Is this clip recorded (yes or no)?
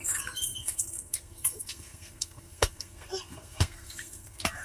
no